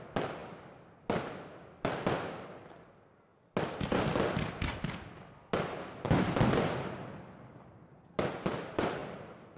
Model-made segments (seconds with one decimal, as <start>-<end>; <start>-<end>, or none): 9.0-9.6

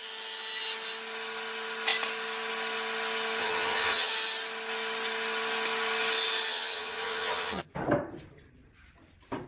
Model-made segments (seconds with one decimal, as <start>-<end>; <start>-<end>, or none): 3.4-4.1; 6.5-7.7

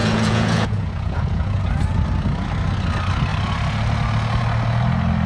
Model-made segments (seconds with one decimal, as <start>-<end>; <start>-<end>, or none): 0.0-1.6

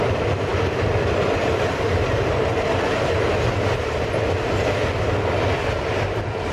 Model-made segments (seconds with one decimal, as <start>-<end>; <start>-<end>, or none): none

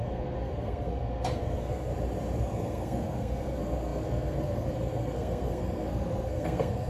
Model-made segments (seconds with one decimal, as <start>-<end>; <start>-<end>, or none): 0.0-1.9; 2.4-6.9

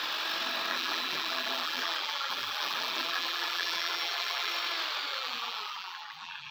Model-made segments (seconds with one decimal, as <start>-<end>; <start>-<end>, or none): 0.7-4.5; 5.1-6.5

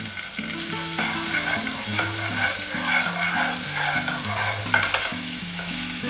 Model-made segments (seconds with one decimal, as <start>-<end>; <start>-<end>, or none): 5.1-6.1